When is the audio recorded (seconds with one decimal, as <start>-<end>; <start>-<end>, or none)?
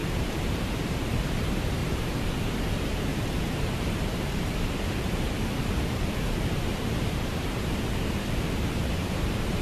1.1-1.8; 2.4-3.1; 7.5-9.6